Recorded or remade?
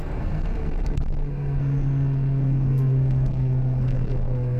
remade